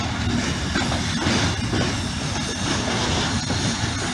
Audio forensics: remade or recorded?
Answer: recorded